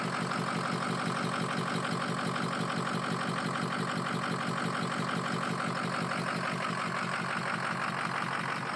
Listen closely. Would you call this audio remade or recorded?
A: recorded